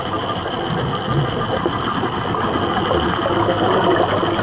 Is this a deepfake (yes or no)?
no